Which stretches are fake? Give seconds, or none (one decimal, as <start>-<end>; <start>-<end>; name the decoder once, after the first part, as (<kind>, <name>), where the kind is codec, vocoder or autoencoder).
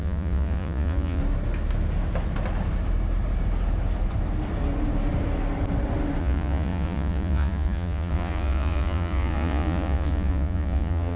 0.0-1.2 (vocoder, Vocos); 6.2-11.2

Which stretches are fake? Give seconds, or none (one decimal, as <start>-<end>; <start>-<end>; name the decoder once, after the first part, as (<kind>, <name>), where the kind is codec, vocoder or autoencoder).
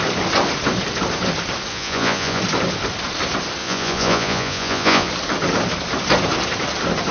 1.7-2.4 (vocoder, Vocos); 3.6-5.1